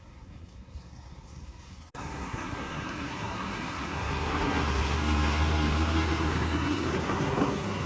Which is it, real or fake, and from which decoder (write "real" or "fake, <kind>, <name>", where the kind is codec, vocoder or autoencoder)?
fake, codec, SNAC